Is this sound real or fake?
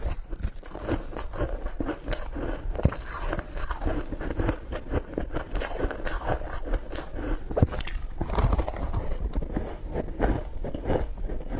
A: real